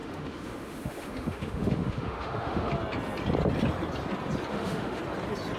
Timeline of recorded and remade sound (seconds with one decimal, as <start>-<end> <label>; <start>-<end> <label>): 0.0-2.7 remade; 2.7-4.5 recorded; 4.5-5.0 remade; 5.0-5.6 recorded